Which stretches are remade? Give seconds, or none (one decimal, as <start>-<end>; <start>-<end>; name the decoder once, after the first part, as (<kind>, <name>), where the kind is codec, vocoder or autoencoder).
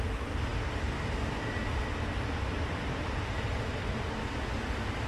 none